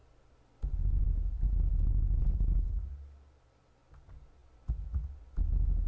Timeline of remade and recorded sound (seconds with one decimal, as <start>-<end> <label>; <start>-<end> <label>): 0.0-2.2 recorded; 2.2-2.8 remade; 2.8-5.9 recorded